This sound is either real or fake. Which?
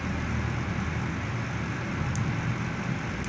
real